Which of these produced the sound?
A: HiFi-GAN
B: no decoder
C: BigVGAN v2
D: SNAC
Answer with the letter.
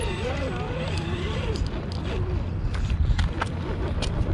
B